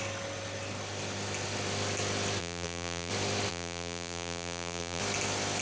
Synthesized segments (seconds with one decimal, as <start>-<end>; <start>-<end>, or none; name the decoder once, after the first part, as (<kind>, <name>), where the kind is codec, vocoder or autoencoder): 2.4-3.1 (vocoder, BigVGAN v2); 3.5-5.0